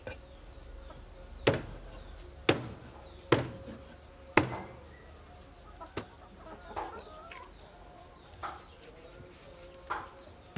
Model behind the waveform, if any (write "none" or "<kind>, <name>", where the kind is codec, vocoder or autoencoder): none